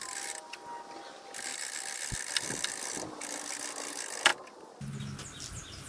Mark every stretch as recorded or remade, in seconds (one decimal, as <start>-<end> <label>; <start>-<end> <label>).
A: 0.0-5.9 recorded